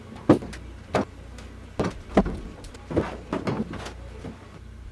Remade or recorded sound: recorded